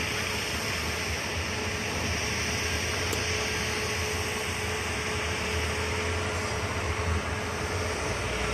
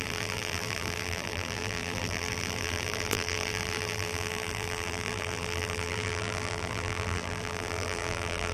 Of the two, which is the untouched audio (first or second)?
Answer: first